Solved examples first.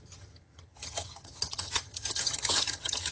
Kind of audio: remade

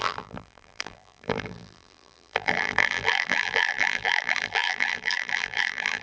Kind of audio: remade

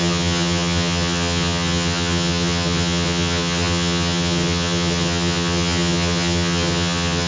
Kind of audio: remade